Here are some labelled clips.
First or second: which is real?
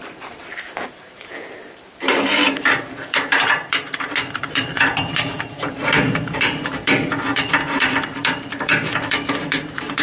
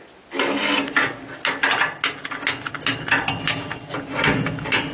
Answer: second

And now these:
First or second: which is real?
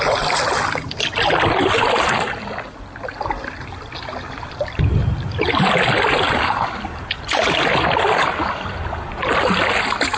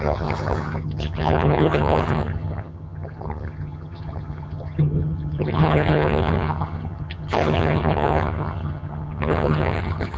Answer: first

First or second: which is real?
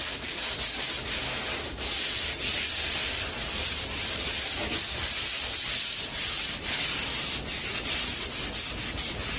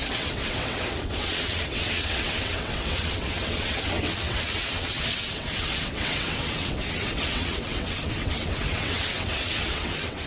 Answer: first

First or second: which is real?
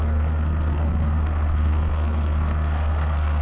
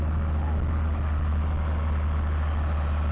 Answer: second